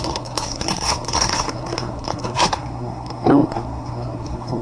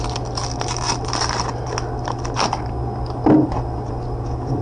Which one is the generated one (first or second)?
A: first